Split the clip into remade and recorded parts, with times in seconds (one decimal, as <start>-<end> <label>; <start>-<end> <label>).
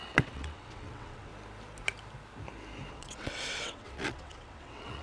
0.0-1.3 remade; 1.3-2.9 recorded; 2.9-5.0 remade